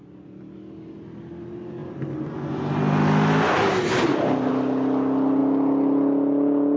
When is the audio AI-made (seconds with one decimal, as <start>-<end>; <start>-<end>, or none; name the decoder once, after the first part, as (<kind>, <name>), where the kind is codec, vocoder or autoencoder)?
none